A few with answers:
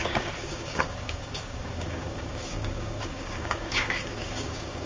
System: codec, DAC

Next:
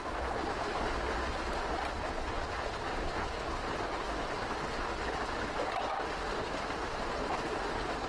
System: none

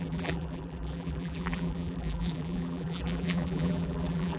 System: vocoder, BigVGAN v2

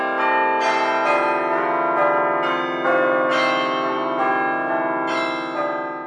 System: none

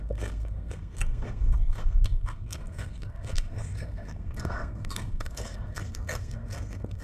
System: codec, SNAC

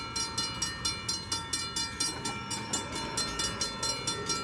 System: none